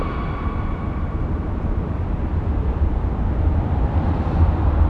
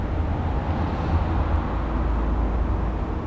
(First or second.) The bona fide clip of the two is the second